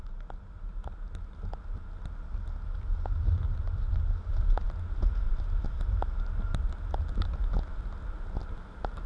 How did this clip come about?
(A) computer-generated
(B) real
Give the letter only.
B